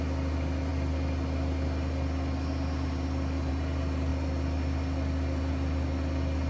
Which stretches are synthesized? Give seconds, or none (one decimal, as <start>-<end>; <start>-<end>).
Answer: none